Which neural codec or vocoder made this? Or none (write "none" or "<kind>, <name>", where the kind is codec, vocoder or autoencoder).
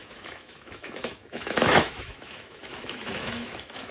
autoencoder, DAC-VAE